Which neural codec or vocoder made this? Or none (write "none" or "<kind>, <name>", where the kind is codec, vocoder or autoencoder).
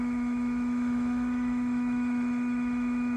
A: autoencoder, DAC-VAE